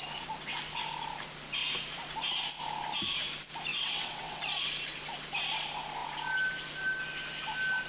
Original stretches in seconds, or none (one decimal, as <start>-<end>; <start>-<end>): 0.0-3.7; 4.4-7.9